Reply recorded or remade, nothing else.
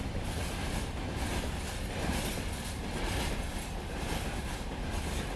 recorded